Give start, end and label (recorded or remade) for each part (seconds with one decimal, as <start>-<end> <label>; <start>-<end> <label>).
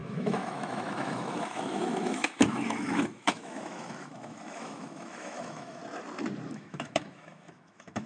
0.0-5.8 remade; 5.8-6.5 recorded; 6.5-8.1 remade